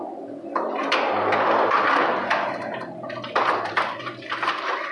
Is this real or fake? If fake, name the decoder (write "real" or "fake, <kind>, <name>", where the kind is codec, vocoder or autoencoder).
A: real